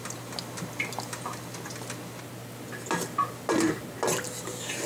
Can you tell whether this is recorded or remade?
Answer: recorded